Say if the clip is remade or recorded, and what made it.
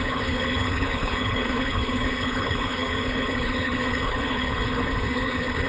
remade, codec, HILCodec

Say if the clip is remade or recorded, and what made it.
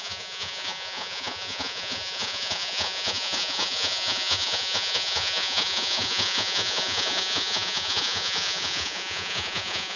remade, vocoder, Vocos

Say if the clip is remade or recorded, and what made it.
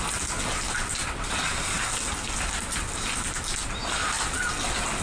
recorded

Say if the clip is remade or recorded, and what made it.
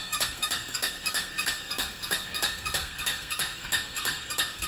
remade, codec, SNAC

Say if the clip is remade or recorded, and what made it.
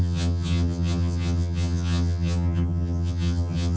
remade, vocoder, HiFi-GAN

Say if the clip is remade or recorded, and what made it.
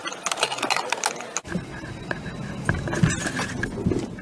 recorded